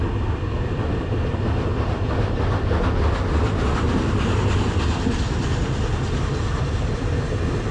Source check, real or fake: real